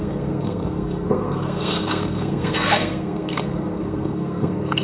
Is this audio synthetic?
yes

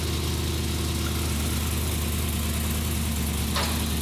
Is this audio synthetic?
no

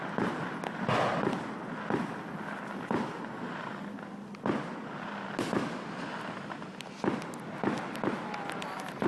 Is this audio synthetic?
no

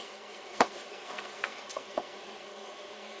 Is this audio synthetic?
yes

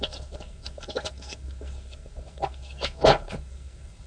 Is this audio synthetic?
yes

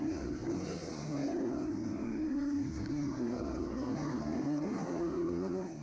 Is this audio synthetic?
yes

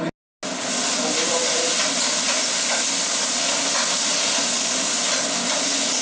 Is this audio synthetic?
no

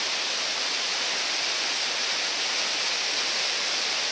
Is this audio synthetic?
no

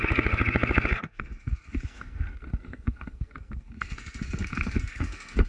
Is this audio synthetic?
yes